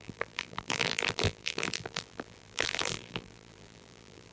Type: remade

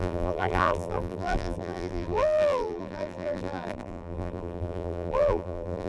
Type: remade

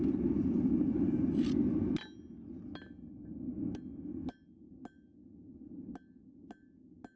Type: recorded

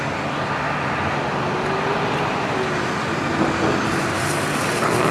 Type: recorded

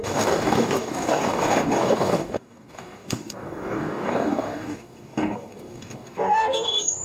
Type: remade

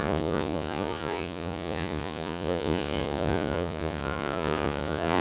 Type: remade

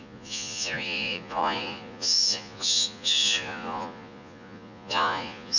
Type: remade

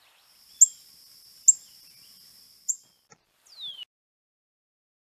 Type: recorded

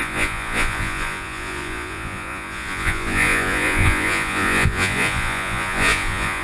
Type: remade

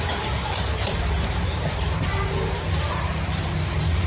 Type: remade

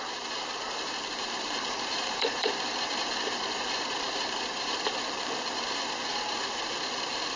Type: remade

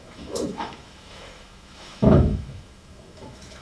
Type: remade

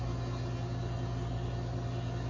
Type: recorded